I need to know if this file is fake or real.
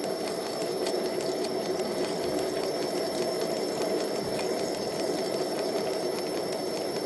fake